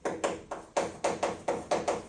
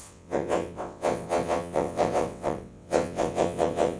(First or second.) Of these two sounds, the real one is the first